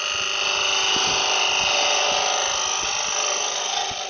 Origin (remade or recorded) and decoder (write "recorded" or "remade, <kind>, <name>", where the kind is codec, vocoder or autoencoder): recorded